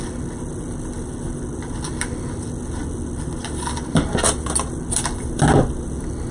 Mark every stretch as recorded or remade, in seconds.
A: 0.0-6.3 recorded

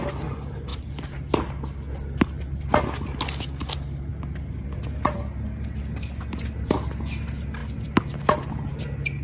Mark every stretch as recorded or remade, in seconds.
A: 0.0-9.2 recorded

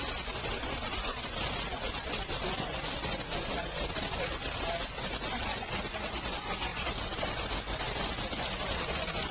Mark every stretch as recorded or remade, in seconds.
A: 0.0-4.4 remade; 4.4-4.9 recorded; 4.9-9.3 remade

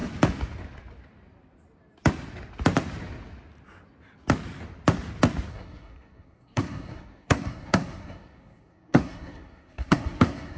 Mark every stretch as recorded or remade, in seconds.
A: 0.0-5.5 recorded; 5.5-10.6 remade